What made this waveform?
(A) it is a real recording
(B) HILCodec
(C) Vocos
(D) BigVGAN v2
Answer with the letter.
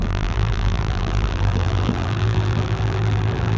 D